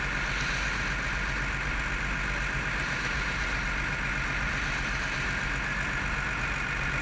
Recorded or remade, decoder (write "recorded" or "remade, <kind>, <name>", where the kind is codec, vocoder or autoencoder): recorded